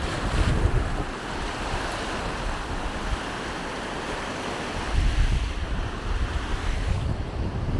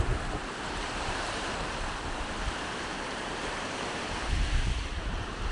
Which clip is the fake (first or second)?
second